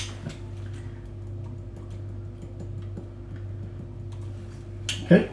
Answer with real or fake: real